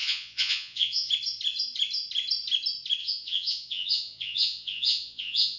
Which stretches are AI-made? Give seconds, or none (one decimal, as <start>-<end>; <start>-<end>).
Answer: 0.0-1.1; 3.0-5.6